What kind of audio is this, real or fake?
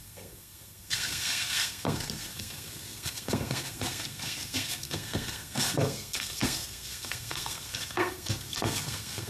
fake